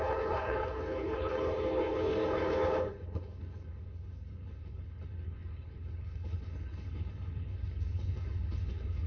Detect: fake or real fake